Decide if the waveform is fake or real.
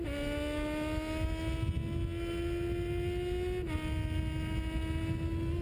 real